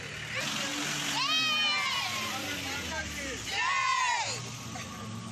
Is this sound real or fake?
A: real